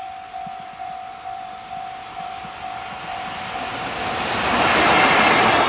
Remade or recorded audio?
remade